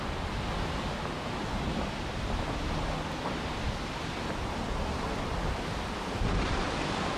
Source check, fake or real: real